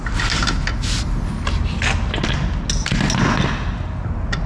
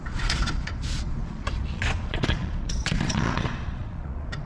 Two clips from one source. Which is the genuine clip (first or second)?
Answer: first